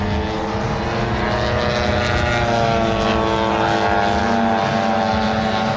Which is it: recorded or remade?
recorded